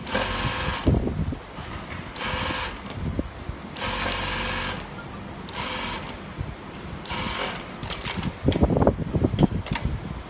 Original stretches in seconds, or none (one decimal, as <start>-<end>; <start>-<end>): 0.0-10.3

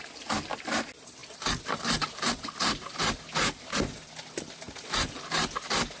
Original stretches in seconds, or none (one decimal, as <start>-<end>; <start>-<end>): 0.0-6.0

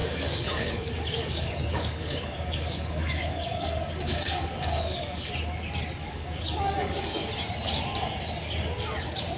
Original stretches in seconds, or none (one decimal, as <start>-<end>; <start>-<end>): 5.3-6.0; 7.3-9.4

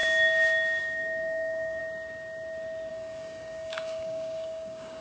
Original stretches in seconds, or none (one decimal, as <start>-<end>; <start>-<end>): 0.0-0.8; 1.8-2.9

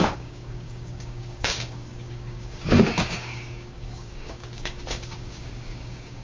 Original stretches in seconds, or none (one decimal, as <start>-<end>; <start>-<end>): none

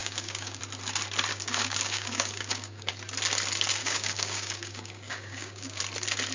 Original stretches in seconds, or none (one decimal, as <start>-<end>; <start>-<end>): 0.6-1.3; 2.9-3.8; 5.8-6.3

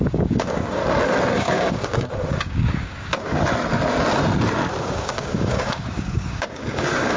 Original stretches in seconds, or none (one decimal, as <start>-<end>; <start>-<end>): 0.8-1.3; 3.1-4.8